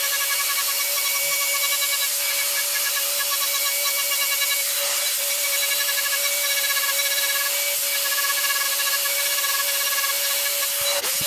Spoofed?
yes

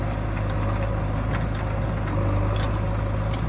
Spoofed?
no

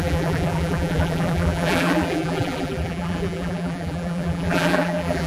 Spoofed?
yes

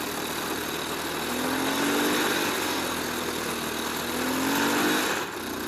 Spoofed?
no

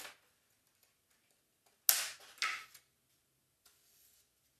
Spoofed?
no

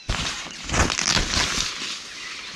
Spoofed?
no